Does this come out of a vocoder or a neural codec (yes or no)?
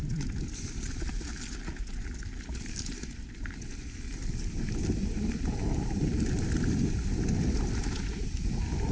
no